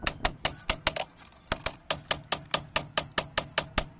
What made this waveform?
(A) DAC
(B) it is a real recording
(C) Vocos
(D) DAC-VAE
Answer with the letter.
B